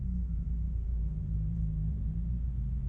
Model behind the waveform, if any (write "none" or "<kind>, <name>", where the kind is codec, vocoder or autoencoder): vocoder, BigVGAN v2